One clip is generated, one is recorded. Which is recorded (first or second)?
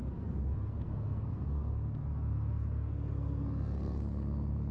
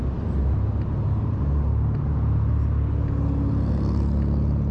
second